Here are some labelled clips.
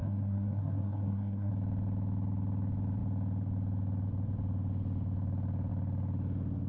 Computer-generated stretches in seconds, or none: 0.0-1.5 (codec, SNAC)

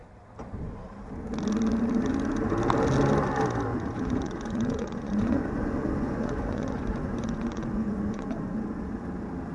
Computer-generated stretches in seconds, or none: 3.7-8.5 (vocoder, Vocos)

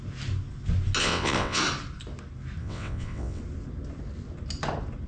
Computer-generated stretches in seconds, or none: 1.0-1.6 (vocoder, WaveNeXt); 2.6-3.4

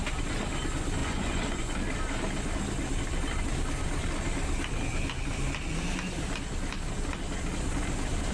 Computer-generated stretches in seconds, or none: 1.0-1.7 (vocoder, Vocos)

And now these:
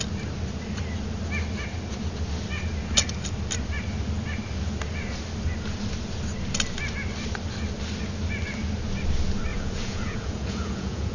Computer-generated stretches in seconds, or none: 9.5-11.1 (vocoder, Vocos)

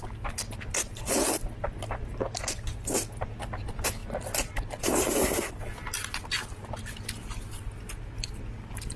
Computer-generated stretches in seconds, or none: none